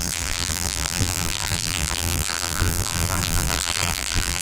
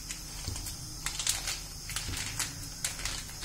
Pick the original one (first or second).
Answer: second